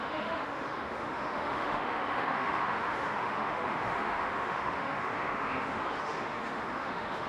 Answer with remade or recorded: remade